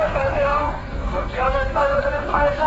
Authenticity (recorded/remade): remade